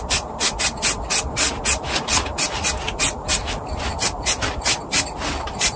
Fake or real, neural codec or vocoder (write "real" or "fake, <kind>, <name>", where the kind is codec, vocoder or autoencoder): fake, vocoder, BigVGAN v2